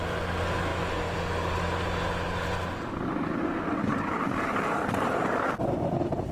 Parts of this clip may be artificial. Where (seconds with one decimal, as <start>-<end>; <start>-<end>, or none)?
none